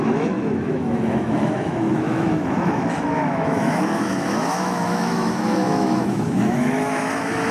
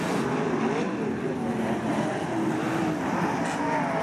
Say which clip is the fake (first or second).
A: first